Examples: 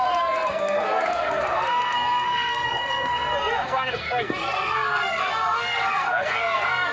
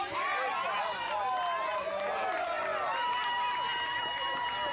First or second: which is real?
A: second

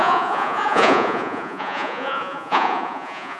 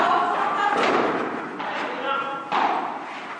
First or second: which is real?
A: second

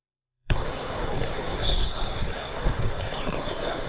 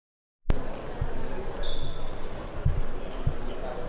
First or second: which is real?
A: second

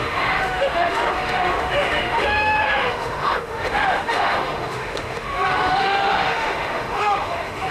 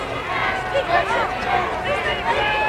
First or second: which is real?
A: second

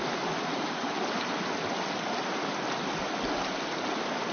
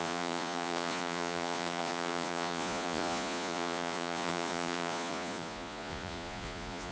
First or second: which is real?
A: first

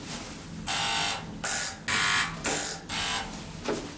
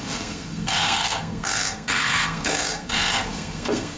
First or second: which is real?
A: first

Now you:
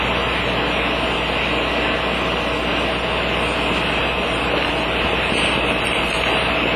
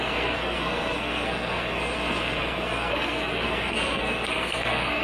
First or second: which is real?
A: first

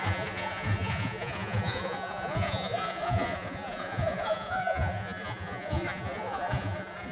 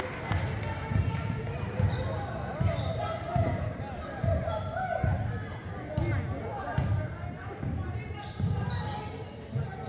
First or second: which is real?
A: second